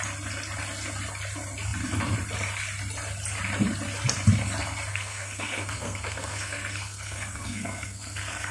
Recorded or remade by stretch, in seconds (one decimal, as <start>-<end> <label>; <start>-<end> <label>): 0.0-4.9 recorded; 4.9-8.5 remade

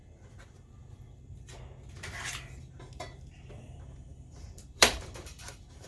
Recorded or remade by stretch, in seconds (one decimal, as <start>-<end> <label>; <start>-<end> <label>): 0.0-4.1 recorded; 4.1-5.0 remade; 5.0-5.9 recorded

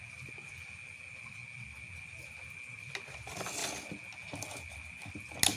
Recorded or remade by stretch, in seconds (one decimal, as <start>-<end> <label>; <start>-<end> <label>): 0.0-5.6 recorded

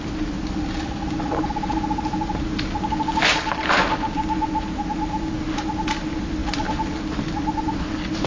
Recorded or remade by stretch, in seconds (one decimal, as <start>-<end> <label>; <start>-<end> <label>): 0.0-8.3 recorded

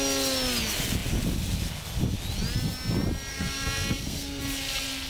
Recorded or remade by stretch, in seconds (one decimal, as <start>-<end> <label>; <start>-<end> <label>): 0.0-3.3 recorded; 3.3-4.4 remade; 4.4-5.1 recorded

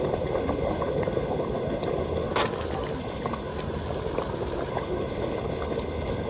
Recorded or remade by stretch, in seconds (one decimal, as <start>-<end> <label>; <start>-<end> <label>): 0.0-2.3 remade; 2.3-3.0 recorded; 3.0-3.5 remade; 3.5-4.7 recorded; 4.7-6.3 remade

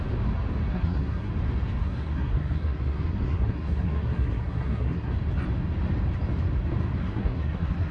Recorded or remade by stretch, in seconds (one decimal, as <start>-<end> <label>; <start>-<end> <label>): 0.0-0.7 recorded; 0.7-1.3 remade; 1.3-1.8 recorded; 1.8-5.1 remade; 5.1-7.0 recorded; 7.0-7.9 remade